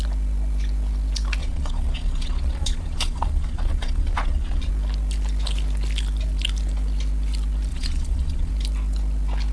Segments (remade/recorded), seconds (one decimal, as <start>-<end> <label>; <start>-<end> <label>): 0.0-1.4 recorded; 1.4-4.7 remade; 4.7-7.7 recorded; 7.7-8.5 remade; 8.5-9.5 recorded